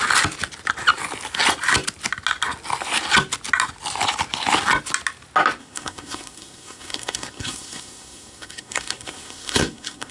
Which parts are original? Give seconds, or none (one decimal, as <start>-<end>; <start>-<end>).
0.0-5.6